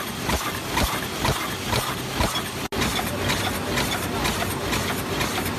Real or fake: real